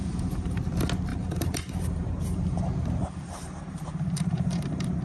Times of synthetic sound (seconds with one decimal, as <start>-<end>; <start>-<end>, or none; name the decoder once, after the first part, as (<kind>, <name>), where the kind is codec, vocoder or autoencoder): 0.0-0.6 (vocoder, BigVGAN v2); 1.1-2.6; 3.0-5.0